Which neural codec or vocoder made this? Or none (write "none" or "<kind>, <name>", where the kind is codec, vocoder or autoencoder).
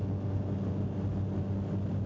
none